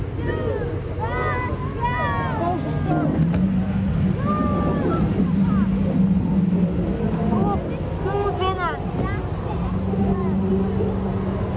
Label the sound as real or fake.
real